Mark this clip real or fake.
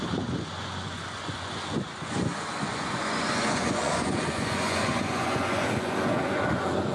fake